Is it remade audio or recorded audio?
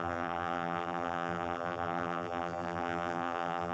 remade